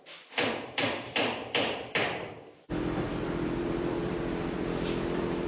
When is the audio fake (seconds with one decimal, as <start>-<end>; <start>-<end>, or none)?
0.0-5.5